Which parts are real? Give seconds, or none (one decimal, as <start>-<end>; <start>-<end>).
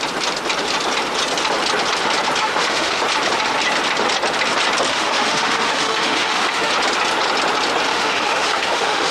0.0-2.4; 3.0-4.9; 6.7-7.9